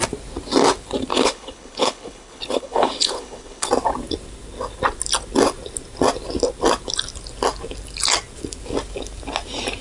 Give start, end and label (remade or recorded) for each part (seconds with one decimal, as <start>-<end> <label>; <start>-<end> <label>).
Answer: 0.0-1.1 recorded; 1.1-3.7 remade; 3.7-9.8 recorded